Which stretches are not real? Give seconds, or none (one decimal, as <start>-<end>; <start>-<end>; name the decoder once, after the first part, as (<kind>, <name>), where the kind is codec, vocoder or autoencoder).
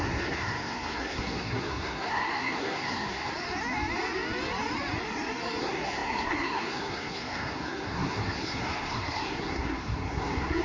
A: 0.0-3.3 (codec, SNAC); 5.6-10.6